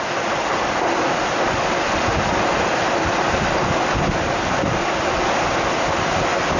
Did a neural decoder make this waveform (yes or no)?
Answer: no